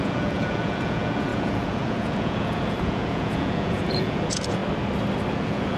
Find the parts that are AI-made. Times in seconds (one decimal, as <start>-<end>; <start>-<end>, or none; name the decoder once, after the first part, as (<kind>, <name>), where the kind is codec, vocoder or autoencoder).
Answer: 0.0-4.6 (vocoder, Vocos); 5.3-5.8